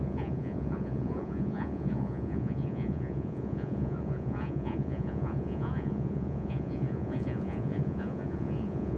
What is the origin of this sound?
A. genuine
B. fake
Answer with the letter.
B